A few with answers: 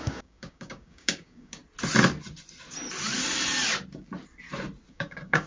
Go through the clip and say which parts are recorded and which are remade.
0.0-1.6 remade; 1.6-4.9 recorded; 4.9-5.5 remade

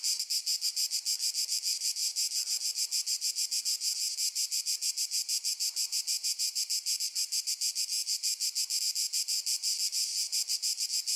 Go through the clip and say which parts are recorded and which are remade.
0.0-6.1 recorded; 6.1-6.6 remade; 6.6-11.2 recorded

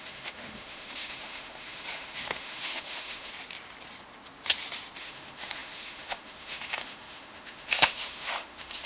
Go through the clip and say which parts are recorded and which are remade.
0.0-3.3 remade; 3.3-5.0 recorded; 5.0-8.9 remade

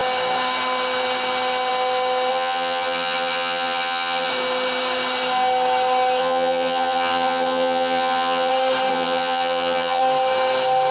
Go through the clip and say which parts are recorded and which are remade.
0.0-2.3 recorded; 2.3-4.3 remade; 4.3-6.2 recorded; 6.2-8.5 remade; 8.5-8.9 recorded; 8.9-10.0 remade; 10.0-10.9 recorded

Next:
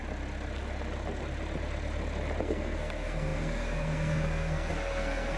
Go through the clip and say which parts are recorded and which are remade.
0.0-2.4 recorded; 2.4-5.4 remade